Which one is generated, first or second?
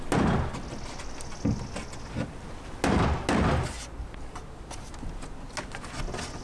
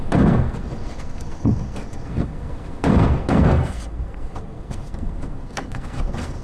second